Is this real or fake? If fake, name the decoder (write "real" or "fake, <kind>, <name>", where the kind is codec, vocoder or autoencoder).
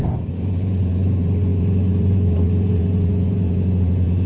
fake, vocoder, BigVGAN v2